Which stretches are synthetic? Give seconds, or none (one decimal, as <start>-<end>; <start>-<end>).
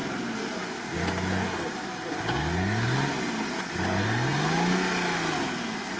none